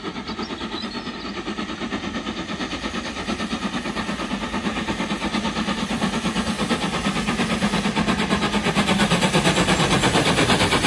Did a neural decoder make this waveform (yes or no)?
no